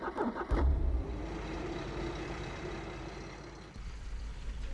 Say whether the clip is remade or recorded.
remade